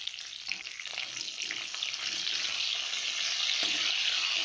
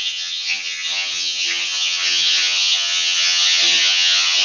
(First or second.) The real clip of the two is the first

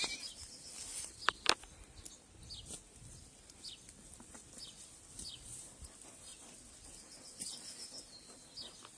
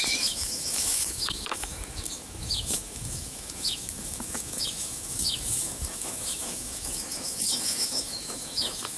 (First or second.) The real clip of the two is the first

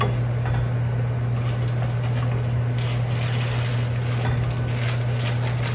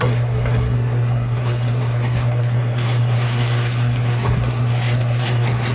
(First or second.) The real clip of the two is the first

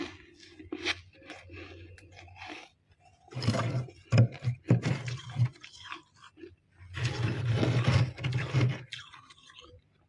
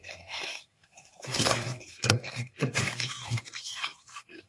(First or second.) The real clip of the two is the first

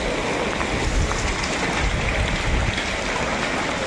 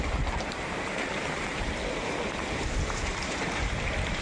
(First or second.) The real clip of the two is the first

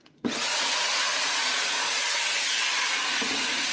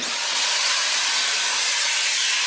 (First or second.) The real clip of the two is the second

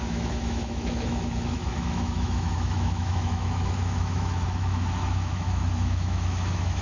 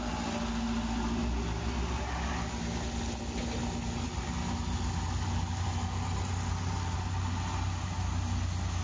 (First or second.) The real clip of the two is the second